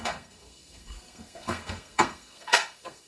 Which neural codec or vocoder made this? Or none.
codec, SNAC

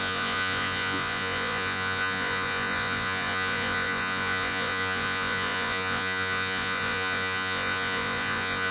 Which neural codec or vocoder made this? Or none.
vocoder, Vocos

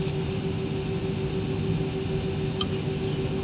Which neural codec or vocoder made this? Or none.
none